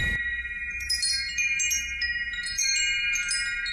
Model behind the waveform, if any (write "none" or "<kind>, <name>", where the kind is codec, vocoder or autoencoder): vocoder, BigVGAN v2